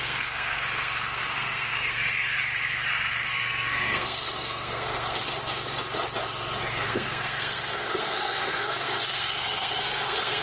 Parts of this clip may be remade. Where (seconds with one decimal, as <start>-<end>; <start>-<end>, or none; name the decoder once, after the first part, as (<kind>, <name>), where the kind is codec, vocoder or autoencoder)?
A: 0.0-5.2 (codec, SNAC); 6.7-10.4

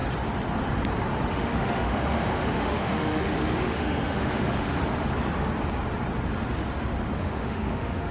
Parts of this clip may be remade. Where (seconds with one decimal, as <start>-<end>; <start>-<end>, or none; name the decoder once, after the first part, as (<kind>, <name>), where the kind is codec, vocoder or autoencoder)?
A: 1.3-4.8 (autoencoder, DAC-VAE); 7.2-8.1